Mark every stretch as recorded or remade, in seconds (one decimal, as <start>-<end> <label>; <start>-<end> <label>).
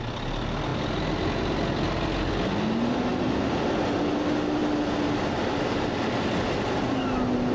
0.0-7.5 recorded